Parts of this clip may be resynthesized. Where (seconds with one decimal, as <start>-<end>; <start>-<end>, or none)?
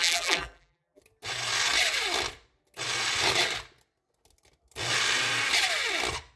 0.0-1.0